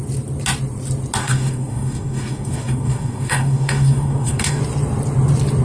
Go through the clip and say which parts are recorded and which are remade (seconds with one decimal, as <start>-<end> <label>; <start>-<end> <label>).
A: 0.0-1.2 recorded; 1.2-4.6 remade; 4.6-5.6 recorded